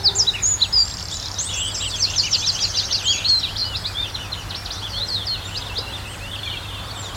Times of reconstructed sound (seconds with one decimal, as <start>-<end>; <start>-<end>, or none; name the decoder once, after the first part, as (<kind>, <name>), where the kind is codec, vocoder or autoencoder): none